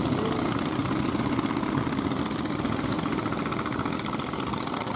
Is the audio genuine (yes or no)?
yes